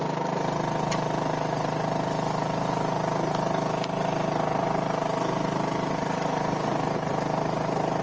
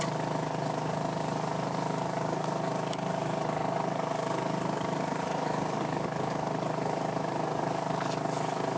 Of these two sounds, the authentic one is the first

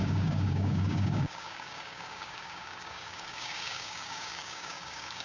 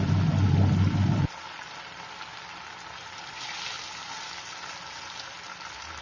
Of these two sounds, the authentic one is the second